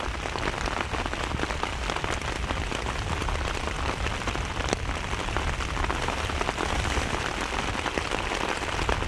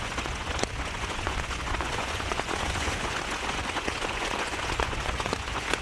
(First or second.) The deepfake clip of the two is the second